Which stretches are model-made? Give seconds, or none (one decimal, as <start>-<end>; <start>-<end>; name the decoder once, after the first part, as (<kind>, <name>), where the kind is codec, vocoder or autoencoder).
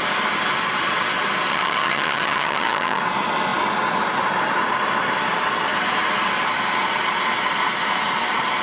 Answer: 1.5-3.0 (vocoder, HiFi-GAN)